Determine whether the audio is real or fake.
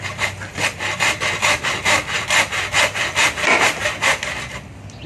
real